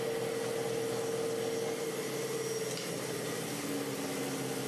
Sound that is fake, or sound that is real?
real